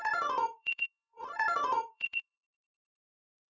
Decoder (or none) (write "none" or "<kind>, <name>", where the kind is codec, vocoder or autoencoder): vocoder, Vocos